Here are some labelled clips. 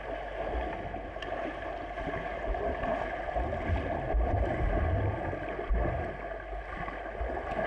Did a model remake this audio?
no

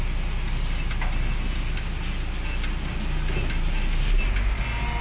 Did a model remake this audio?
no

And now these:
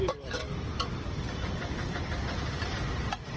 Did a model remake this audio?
yes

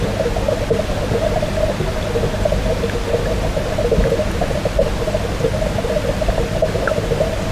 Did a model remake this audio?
no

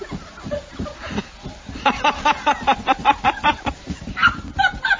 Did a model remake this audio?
yes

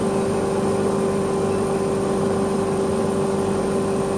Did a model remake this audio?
no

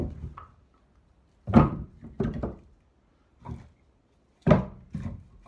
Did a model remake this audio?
no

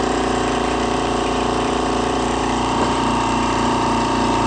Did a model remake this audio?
yes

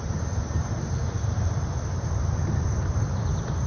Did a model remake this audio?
yes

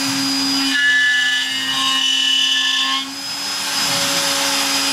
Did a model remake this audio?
no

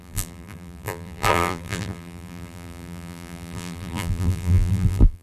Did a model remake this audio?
yes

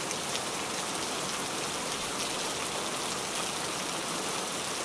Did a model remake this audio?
no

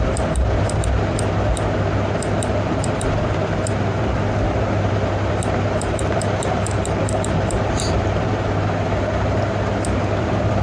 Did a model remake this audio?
yes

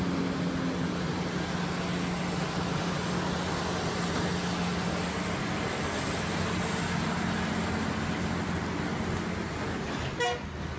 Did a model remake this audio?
no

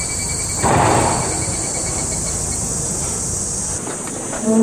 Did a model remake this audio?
no